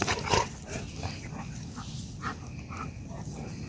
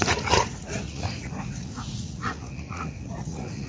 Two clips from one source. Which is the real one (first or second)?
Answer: first